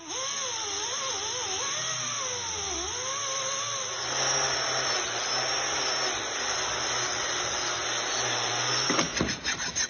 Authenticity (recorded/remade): recorded